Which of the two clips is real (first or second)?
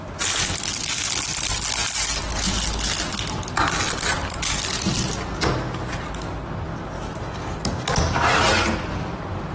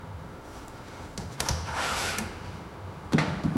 first